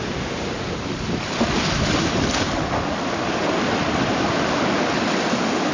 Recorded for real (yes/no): yes